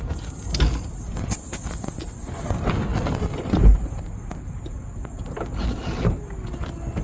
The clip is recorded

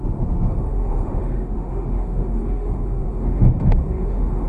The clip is remade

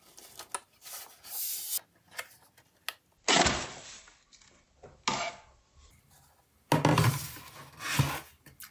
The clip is recorded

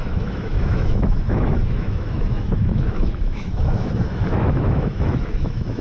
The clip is remade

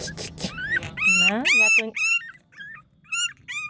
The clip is recorded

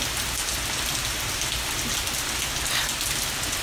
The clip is recorded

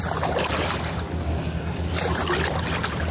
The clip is recorded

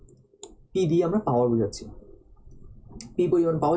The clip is recorded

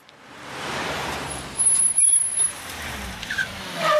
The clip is remade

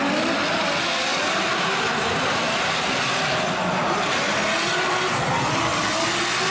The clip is recorded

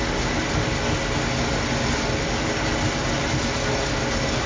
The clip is recorded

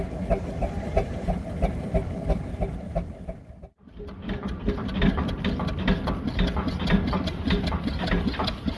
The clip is recorded